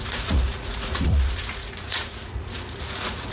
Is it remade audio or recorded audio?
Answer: remade